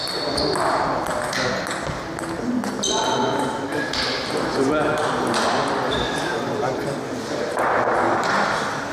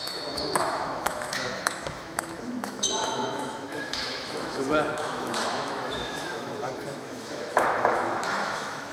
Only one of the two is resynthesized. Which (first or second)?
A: second